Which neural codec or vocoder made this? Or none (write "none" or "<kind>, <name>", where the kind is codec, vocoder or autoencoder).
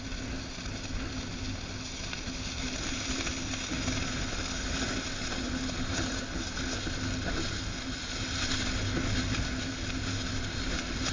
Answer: none